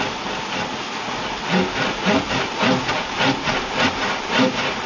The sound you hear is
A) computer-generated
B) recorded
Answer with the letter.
B